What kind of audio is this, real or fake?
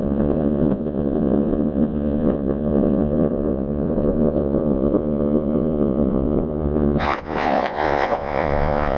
fake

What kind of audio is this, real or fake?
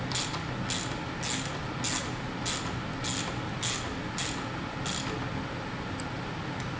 real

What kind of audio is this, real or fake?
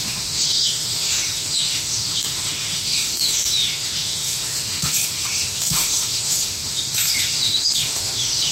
fake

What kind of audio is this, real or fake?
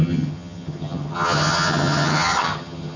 fake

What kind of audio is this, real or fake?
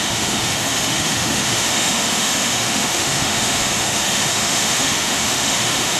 fake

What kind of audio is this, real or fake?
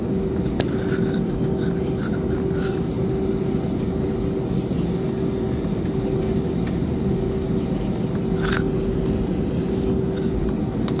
real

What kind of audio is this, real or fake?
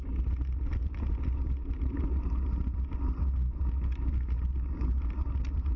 real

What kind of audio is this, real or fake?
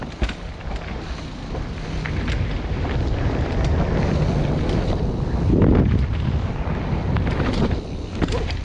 real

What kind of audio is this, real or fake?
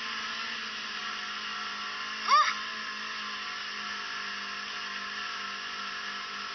real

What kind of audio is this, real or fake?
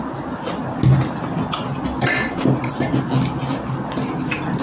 real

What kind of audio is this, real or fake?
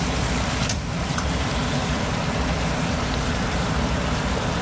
fake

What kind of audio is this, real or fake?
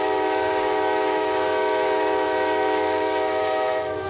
fake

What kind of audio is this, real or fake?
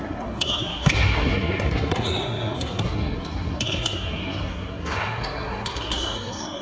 fake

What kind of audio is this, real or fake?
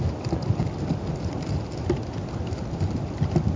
real